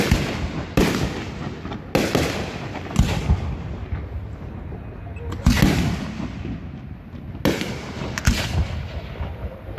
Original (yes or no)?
yes